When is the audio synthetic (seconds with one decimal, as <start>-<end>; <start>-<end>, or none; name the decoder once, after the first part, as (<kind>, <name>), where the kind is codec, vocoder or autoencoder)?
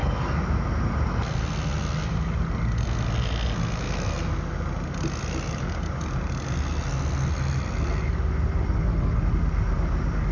none